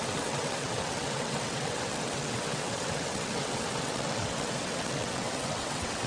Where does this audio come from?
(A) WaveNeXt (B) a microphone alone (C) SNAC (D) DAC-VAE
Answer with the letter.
A